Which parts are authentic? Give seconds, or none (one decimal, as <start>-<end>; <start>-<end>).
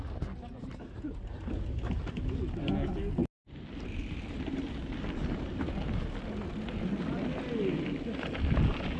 0.0-9.0